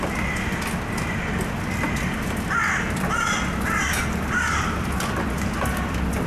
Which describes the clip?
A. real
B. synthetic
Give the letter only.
A